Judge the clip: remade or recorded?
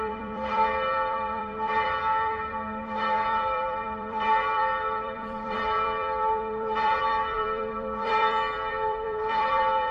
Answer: remade